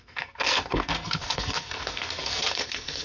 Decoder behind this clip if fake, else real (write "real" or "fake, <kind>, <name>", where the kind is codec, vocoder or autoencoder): fake, codec, SNAC